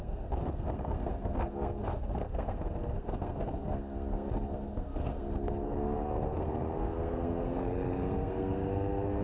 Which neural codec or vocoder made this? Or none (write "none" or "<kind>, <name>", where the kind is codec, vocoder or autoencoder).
codec, SNAC